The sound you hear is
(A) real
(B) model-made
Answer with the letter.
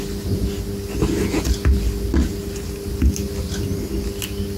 A